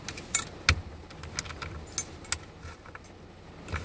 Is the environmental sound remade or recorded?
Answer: recorded